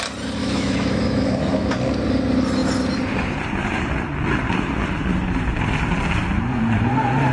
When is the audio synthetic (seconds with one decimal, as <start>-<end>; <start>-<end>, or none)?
0.4-1.7

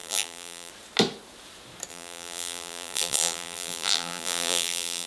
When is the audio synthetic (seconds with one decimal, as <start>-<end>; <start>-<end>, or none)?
0.0-0.7; 1.9-5.1